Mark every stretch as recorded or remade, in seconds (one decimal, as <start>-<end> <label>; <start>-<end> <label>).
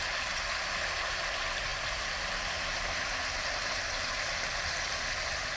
0.0-1.7 recorded; 1.7-3.8 remade; 3.8-5.6 recorded